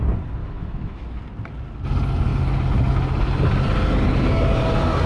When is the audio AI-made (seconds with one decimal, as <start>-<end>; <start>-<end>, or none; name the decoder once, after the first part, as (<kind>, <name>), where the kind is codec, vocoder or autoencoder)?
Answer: 0.4-1.2 (autoencoder, DAC-VAE)